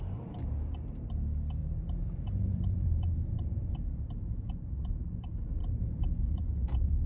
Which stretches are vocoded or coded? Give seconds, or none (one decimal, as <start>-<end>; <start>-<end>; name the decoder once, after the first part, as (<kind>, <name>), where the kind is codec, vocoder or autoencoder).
1.6-3.6 (vocoder, BigVGAN v2); 5.6-6.4